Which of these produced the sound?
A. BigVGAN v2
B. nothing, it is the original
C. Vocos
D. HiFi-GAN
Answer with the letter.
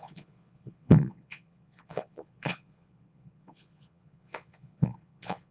C